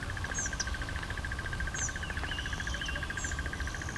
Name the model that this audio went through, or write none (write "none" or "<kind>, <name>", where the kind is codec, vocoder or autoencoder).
none